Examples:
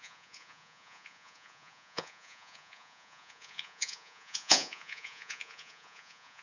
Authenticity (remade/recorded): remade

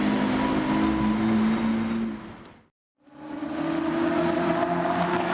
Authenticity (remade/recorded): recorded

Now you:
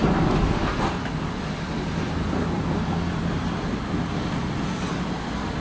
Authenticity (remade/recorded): recorded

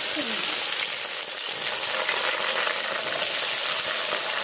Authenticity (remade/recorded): recorded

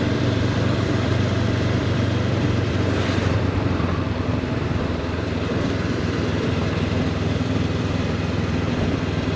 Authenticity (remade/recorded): remade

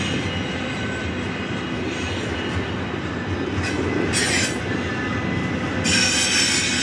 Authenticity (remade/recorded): recorded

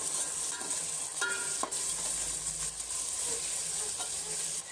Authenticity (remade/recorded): recorded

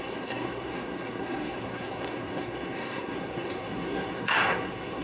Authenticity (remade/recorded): remade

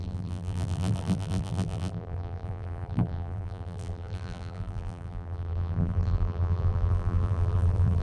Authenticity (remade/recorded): remade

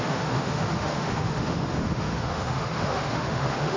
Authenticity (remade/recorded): remade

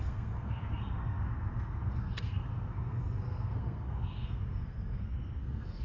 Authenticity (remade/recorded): remade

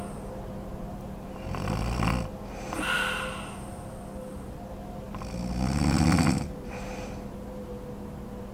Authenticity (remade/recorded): recorded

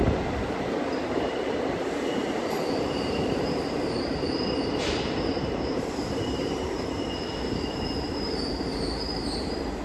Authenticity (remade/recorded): remade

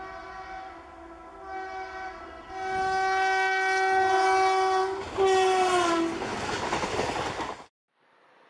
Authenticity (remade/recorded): recorded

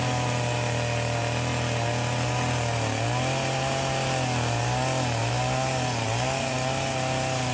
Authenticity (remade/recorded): recorded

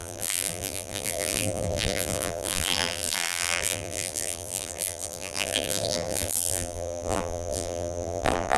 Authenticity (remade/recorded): remade